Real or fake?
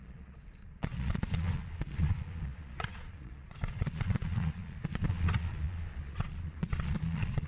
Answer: fake